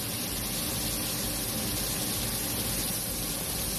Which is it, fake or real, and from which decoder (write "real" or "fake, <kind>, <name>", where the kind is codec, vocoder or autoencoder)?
real